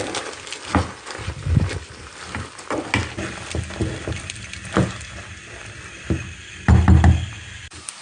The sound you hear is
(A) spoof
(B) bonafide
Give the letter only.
B